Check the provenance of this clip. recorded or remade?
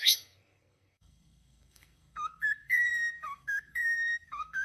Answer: remade